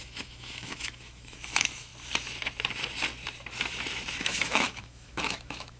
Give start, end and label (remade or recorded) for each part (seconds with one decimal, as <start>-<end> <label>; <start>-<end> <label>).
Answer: 0.0-1.9 remade; 1.9-4.2 recorded; 4.2-5.8 remade